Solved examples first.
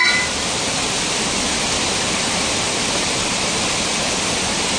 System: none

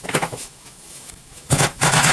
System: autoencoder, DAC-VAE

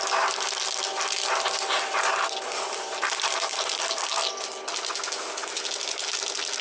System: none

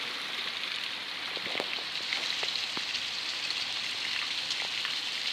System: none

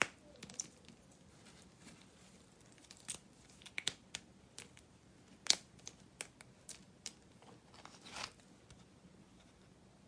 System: none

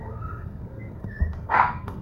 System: codec, SNAC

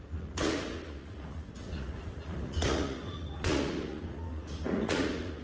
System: vocoder, Vocos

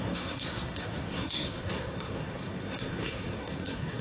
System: codec, SNAC